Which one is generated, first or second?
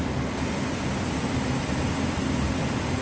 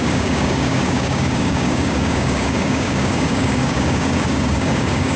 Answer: second